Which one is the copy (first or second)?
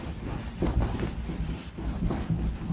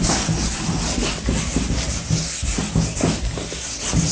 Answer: first